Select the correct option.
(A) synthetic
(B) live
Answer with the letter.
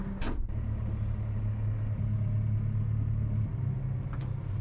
B